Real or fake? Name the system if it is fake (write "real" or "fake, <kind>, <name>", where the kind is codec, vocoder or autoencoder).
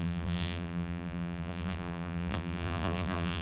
fake, vocoder, BigVGAN v2